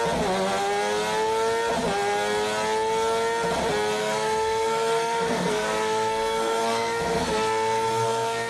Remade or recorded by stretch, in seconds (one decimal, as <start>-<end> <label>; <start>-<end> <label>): 0.0-4.0 recorded; 4.0-8.5 remade